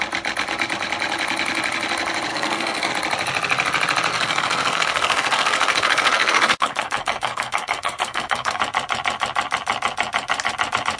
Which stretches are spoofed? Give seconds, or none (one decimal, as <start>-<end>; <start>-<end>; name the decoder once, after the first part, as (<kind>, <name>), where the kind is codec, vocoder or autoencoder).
2.3-2.9 (codec, SNAC); 4.1-8.6